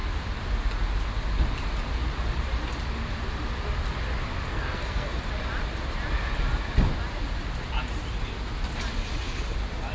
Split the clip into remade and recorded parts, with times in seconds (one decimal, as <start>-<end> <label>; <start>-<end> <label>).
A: 0.0-4.5 recorded; 4.5-5.2 remade; 5.2-9.9 recorded